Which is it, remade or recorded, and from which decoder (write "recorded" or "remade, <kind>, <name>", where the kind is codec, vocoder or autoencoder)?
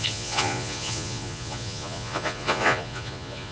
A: remade, vocoder, Vocos